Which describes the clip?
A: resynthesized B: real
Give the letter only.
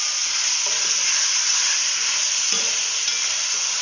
B